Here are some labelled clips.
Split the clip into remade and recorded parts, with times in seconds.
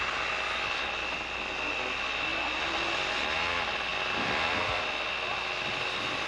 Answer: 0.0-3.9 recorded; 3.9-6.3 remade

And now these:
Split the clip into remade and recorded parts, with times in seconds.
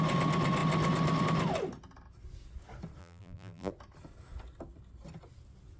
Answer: 0.0-3.0 recorded; 3.0-3.7 remade; 3.7-5.8 recorded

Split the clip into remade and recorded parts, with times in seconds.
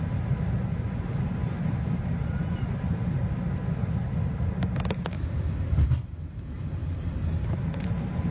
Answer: 0.0-1.4 recorded; 1.4-5.5 remade; 5.5-8.3 recorded